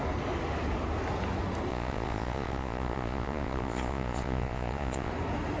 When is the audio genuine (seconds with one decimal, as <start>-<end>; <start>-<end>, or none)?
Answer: 0.0-1.7; 5.1-5.6